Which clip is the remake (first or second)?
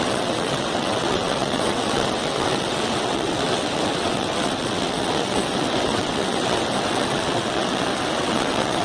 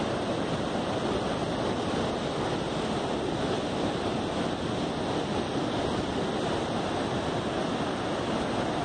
first